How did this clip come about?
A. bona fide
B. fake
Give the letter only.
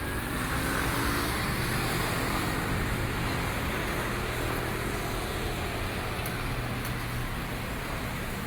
A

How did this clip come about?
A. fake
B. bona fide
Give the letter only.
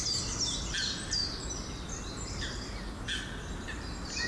B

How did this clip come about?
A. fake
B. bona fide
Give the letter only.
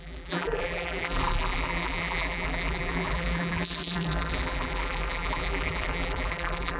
A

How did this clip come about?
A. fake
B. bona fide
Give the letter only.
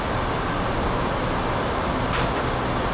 B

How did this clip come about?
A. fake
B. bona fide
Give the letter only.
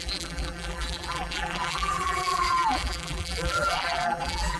A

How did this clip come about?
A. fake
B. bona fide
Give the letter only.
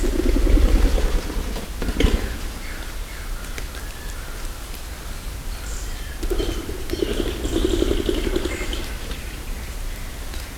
B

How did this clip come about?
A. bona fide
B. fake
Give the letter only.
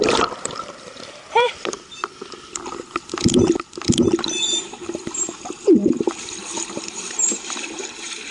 B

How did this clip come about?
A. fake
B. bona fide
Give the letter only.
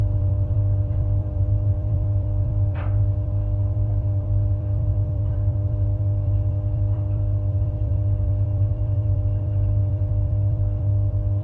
A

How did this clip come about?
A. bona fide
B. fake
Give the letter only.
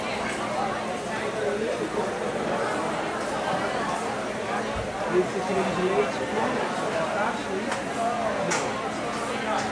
A